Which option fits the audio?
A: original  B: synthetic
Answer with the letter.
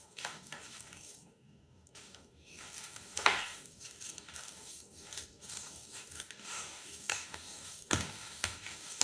B